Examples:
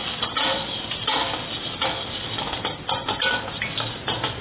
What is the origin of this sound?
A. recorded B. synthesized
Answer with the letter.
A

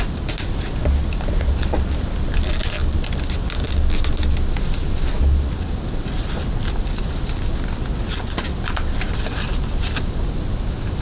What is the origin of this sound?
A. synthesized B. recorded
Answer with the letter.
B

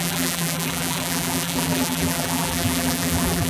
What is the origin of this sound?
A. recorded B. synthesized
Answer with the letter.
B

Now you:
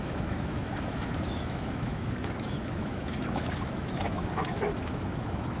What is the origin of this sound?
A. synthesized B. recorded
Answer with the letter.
A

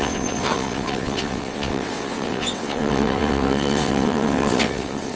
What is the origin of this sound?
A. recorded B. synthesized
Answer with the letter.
B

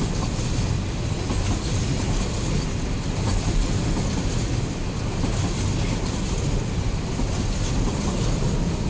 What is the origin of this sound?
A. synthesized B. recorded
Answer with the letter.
B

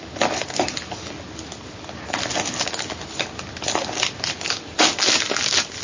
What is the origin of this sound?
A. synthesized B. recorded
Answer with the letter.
B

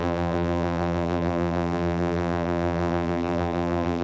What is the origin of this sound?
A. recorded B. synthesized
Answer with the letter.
B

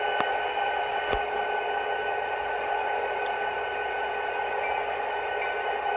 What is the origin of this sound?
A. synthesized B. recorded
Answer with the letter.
B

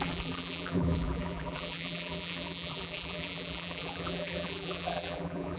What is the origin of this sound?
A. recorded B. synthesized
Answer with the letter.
B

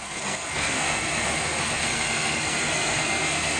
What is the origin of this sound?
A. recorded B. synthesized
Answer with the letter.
B